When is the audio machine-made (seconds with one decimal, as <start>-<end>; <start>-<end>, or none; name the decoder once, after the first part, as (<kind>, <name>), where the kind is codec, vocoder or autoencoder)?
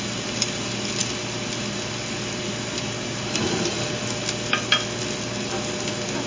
none